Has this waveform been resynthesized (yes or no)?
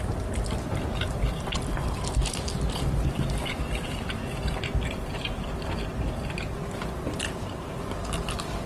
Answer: no